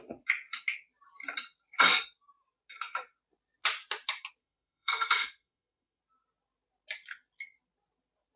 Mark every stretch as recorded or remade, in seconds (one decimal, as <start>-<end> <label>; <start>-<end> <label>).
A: 0.0-4.4 recorded; 4.4-6.0 remade; 6.0-8.4 recorded